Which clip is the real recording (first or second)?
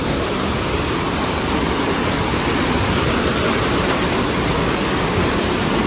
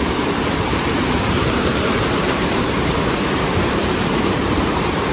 first